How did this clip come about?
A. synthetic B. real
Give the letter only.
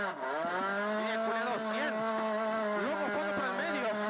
B